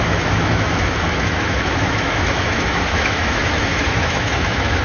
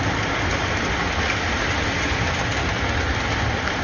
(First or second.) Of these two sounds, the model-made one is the first